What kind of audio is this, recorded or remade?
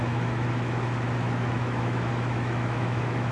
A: remade